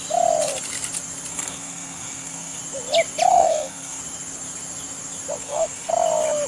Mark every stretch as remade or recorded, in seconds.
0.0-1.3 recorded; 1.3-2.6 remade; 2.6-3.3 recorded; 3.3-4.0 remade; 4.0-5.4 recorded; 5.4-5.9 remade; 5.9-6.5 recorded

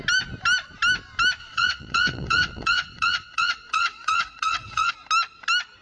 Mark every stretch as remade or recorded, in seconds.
0.0-1.4 recorded; 1.4-4.9 remade; 4.9-5.8 recorded

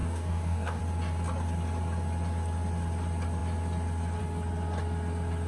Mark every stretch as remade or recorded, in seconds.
0.0-0.8 remade; 0.8-5.5 recorded

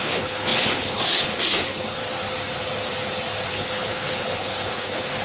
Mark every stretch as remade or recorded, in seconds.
0.0-2.0 remade; 2.0-3.5 recorded; 3.5-5.2 remade